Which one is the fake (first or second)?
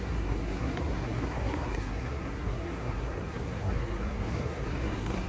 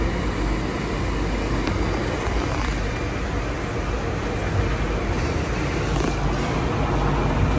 first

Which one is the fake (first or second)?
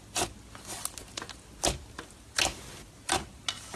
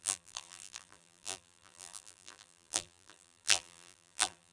second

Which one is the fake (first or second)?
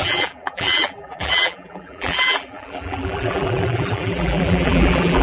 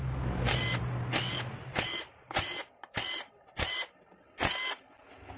first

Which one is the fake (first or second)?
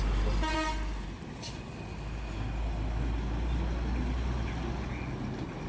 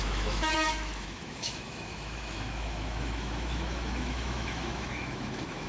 second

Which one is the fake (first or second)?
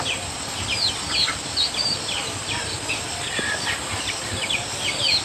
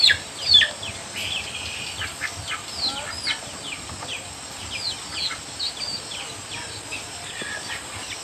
first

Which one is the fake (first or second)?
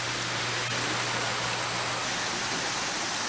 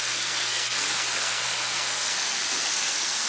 second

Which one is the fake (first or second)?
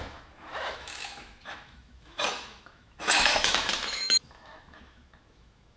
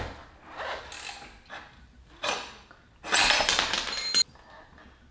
first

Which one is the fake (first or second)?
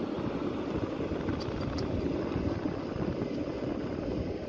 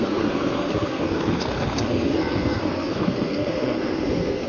second